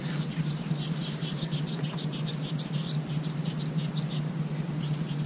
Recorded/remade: recorded